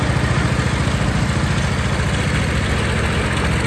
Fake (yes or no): no